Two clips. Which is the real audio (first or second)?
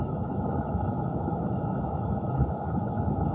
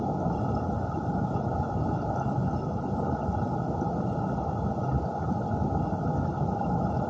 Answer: second